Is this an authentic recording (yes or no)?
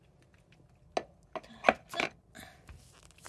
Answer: yes